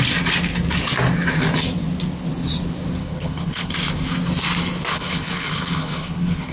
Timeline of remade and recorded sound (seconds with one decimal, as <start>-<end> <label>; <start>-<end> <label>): 0.0-3.0 recorded; 3.0-3.7 remade; 3.7-4.9 recorded; 4.9-6.5 remade